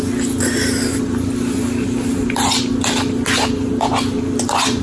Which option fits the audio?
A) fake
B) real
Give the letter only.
B